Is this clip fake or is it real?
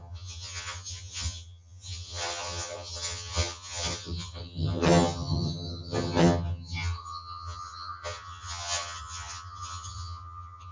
fake